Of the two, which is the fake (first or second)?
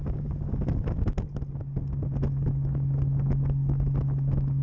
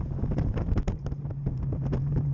second